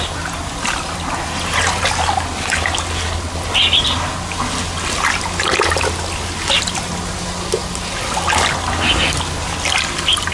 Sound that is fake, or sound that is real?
real